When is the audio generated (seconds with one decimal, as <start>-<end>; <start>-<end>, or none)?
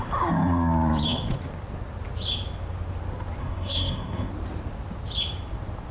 3.4-4.3